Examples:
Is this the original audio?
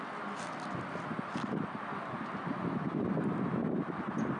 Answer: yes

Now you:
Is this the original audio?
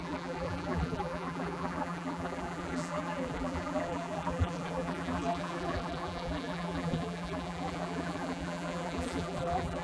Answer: no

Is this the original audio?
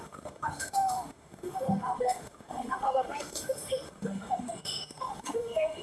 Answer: no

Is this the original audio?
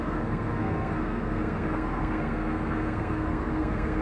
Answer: no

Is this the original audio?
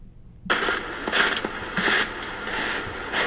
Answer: yes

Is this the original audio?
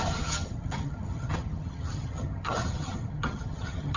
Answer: no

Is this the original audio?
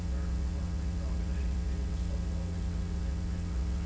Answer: no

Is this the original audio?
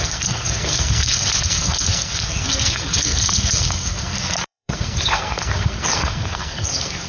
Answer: no